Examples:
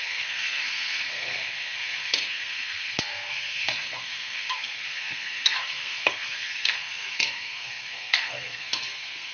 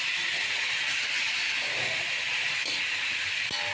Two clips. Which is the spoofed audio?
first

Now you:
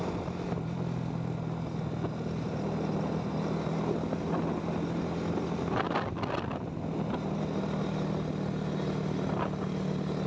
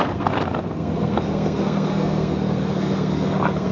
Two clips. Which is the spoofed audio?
second